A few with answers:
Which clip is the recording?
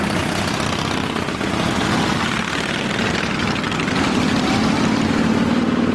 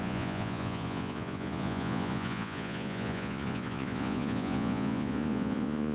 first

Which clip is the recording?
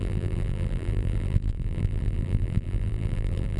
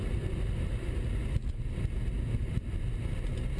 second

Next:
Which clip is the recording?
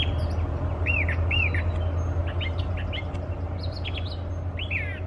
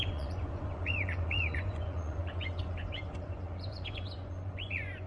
first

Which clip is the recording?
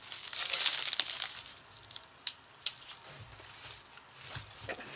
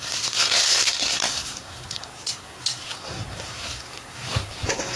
first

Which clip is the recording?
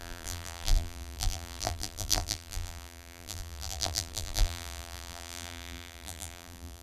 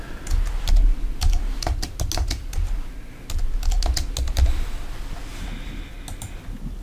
second